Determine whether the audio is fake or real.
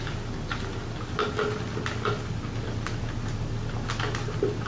real